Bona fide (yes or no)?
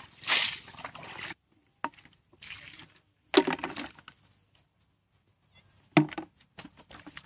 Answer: yes